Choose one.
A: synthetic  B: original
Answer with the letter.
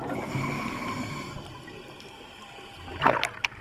B